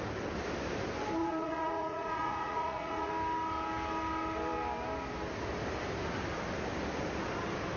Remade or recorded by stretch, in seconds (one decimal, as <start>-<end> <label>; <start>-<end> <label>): 0.0-1.2 recorded; 1.2-3.1 remade; 3.1-7.8 recorded